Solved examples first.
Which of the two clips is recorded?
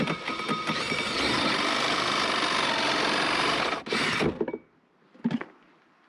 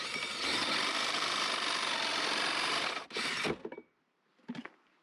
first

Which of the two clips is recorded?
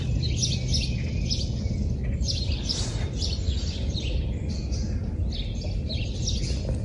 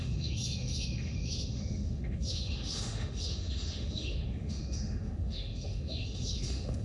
first